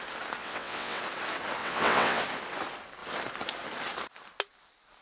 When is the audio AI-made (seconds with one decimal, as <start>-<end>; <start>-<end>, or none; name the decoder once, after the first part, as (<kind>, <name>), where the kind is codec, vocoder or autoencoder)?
0.4-1.0 (vocoder, WaveNeXt); 1.6-2.2